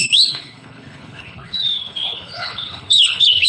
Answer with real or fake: fake